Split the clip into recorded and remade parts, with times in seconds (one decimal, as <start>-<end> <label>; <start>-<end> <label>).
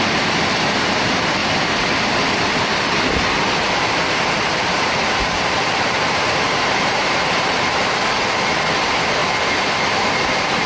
0.0-1.4 remade; 1.4-4.7 recorded; 4.7-9.2 remade; 9.2-10.0 recorded; 10.0-10.7 remade